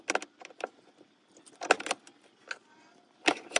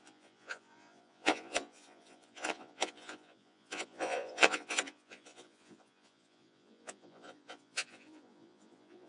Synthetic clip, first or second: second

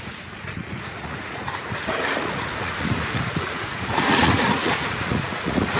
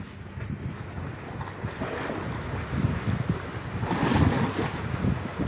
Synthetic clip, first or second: first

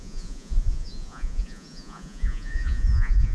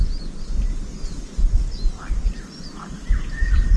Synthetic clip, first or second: first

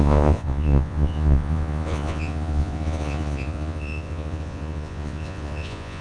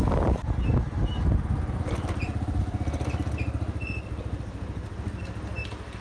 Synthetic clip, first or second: first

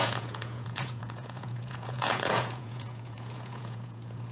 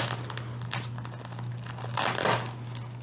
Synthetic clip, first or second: first